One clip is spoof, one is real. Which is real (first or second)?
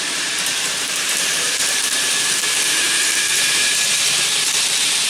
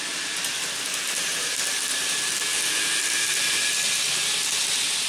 second